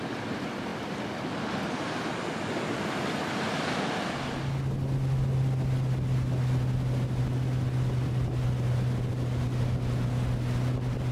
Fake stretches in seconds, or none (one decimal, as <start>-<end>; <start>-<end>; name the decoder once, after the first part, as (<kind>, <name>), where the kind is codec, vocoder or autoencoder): none